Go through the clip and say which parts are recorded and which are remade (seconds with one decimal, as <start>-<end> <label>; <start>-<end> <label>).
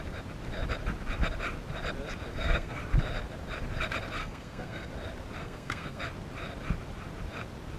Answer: 0.0-2.3 recorded; 2.3-2.8 remade; 2.8-4.2 recorded; 4.2-4.9 remade; 4.9-5.4 recorded; 5.4-6.0 remade; 6.0-7.8 recorded